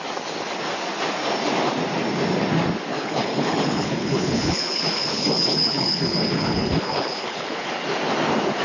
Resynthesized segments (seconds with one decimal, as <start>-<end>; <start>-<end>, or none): 2.9-7.7